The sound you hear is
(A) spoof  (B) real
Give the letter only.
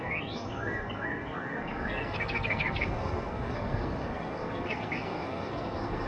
A